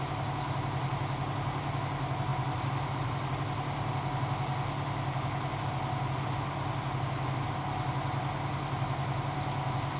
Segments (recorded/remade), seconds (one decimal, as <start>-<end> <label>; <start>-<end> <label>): 0.0-2.3 recorded; 2.3-3.1 remade; 3.1-10.0 recorded